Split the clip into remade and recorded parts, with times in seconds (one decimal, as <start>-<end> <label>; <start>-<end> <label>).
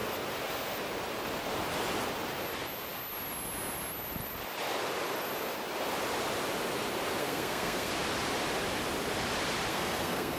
0.0-7.2 recorded; 7.2-7.9 remade; 7.9-9.7 recorded; 9.7-10.4 remade